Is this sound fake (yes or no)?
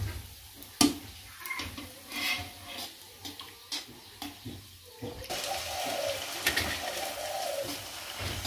no